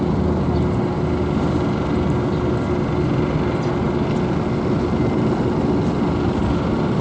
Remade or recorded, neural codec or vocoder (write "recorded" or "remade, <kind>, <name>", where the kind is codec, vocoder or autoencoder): recorded